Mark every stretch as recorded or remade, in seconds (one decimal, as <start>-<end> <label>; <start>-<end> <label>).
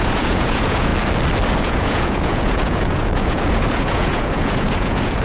0.0-0.9 remade; 0.9-1.6 recorded; 1.6-5.2 remade